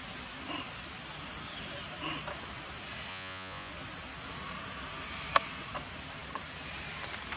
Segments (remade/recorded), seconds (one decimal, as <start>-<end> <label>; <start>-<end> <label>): 0.0-3.1 recorded; 3.1-3.7 remade; 3.7-7.4 recorded